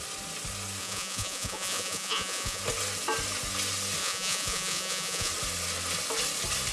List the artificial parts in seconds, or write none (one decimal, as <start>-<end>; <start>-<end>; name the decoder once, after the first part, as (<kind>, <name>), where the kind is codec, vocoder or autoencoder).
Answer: 0.8-2.6 (vocoder, Vocos); 4.0-5.3